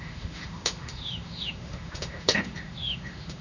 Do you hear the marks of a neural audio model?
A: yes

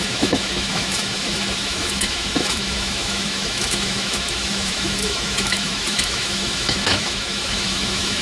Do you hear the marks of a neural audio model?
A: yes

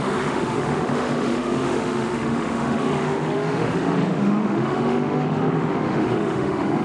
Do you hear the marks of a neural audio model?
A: yes